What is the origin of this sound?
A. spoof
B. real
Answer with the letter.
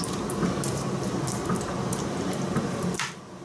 B